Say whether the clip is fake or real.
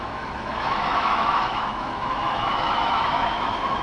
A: fake